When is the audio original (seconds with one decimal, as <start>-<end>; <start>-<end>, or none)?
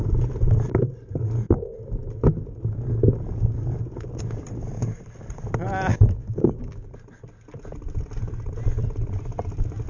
0.0-5.9; 6.9-9.9